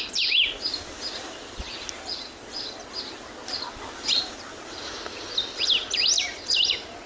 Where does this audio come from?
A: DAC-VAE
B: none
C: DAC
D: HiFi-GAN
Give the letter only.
B